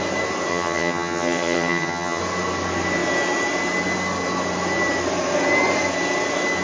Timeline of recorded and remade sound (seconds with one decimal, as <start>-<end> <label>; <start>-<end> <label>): 0.0-0.5 recorded; 0.5-2.2 remade; 2.2-6.6 recorded